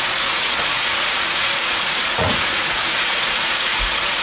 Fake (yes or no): yes